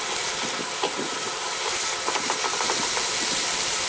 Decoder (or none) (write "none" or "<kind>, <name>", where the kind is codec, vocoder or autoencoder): none